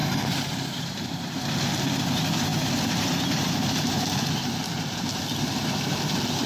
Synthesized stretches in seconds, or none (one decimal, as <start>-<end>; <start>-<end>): 0.0-1.1; 2.5-5.2